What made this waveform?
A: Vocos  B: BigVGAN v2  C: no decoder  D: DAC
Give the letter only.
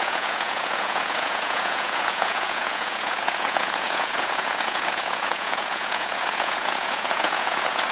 A